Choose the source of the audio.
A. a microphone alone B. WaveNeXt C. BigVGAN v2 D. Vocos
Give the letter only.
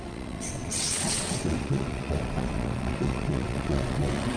B